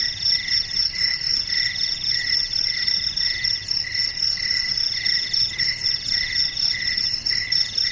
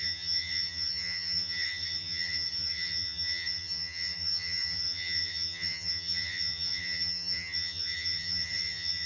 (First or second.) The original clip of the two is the first